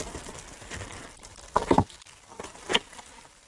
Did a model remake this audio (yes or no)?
yes